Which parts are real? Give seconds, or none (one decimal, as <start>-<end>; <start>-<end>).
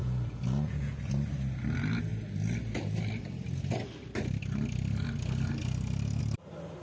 1.0-6.8